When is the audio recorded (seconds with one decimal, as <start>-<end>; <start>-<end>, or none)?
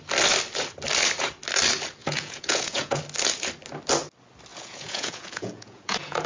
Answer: 0.0-2.0; 3.0-4.5